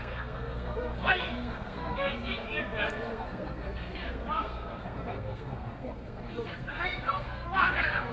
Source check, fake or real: fake